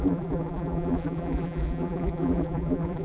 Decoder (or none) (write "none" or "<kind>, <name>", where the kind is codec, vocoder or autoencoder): vocoder, BigVGAN v2